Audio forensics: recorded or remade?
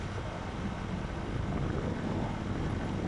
recorded